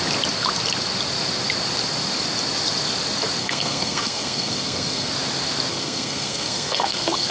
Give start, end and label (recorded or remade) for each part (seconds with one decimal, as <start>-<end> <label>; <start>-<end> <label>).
0.0-3.4 recorded; 3.4-5.1 remade; 5.1-5.7 recorded; 5.7-7.3 remade